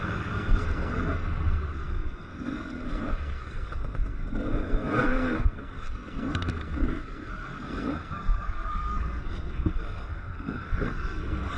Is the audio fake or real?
fake